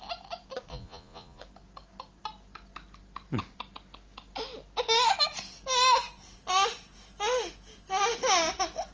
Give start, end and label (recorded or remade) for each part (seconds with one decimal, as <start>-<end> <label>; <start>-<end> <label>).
0.0-0.7 recorded; 0.7-1.4 remade; 1.4-8.9 recorded